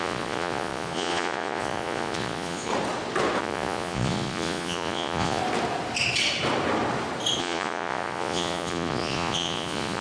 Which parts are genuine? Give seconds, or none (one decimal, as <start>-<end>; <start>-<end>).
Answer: 2.7-3.4; 5.4-7.4